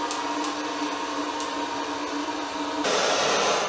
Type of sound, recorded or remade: recorded